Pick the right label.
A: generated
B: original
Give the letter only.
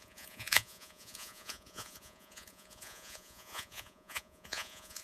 A